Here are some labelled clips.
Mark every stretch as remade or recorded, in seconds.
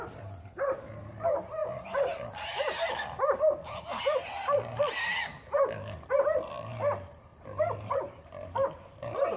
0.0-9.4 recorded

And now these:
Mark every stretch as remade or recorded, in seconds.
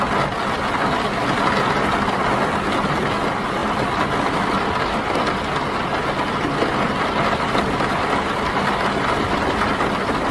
0.0-3.6 recorded; 3.6-4.7 remade; 4.7-10.3 recorded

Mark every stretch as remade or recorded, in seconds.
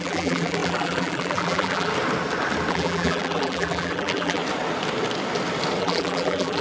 0.0-1.9 remade; 1.9-2.7 recorded; 2.7-4.4 remade; 4.4-5.8 recorded; 5.8-6.6 remade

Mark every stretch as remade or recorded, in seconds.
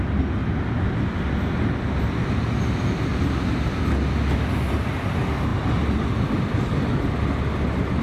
0.0-3.1 recorded; 3.1-3.8 remade; 3.8-8.0 recorded